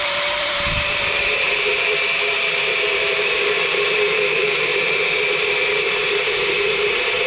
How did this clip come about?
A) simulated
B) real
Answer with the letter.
A